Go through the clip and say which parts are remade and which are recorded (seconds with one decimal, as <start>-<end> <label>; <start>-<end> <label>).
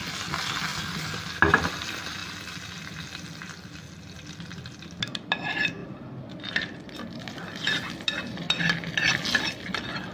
0.0-0.7 recorded; 0.7-1.7 remade; 1.7-5.8 recorded; 5.8-8.6 remade; 8.6-10.1 recorded